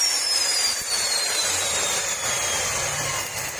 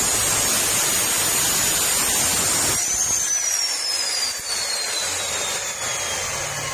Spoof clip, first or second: first